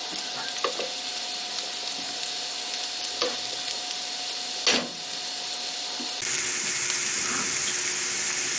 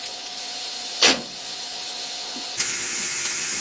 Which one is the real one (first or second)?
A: first